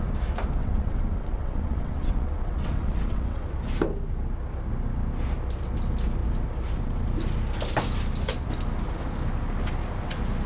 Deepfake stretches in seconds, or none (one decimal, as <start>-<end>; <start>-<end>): 0.6-3.4